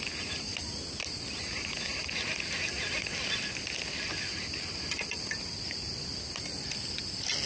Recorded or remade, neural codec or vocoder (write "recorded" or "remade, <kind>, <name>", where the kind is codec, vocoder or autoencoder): recorded